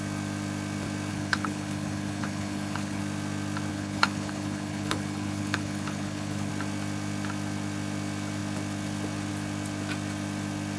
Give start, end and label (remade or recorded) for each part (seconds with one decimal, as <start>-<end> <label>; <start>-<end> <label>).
0.0-1.1 recorded; 1.1-3.0 remade; 3.0-3.7 recorded; 3.7-6.5 remade; 6.5-10.8 recorded

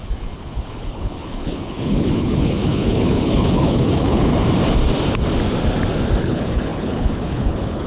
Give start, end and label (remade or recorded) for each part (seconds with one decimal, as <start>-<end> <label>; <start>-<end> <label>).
0.0-4.3 remade; 4.3-6.2 recorded; 6.2-7.9 remade

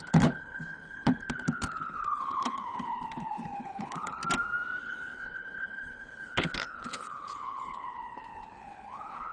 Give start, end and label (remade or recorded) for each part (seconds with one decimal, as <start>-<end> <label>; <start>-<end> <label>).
0.0-4.2 remade; 4.2-4.8 recorded; 4.8-9.3 remade

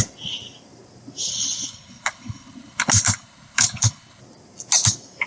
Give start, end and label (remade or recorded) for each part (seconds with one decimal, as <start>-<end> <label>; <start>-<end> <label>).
0.0-1.3 recorded; 1.3-4.2 remade; 4.2-5.3 recorded

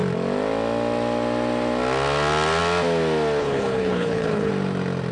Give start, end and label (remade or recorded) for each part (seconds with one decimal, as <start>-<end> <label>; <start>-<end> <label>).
0.0-3.4 recorded; 3.4-4.5 remade; 4.5-5.1 recorded

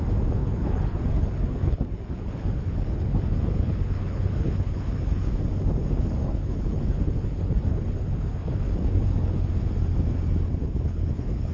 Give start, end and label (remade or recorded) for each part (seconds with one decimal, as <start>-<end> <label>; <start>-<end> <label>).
0.0-0.4 recorded; 0.4-5.3 remade; 5.3-5.7 recorded; 5.7-9.5 remade; 9.5-10.6 recorded; 10.6-11.5 remade